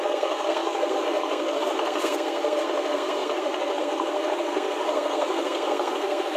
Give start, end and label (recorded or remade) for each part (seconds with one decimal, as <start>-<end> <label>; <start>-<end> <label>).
0.0-6.4 remade